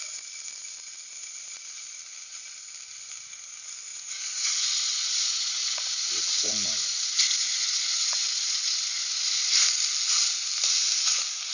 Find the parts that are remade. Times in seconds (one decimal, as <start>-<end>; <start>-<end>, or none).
3.9-4.5; 4.9-9.5